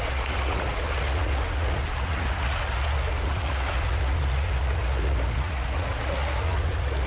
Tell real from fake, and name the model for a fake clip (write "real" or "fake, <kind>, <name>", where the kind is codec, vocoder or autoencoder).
fake, vocoder, Vocos